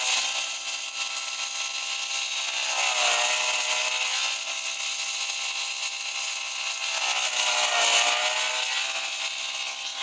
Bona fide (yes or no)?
yes